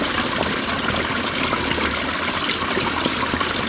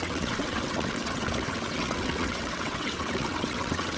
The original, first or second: first